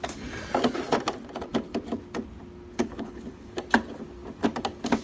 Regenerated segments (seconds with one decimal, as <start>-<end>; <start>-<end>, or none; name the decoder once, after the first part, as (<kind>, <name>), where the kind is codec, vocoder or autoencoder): 2.8-3.5 (codec, HILCodec)